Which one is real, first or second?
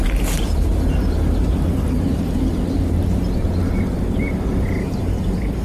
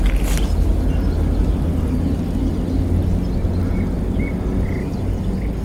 second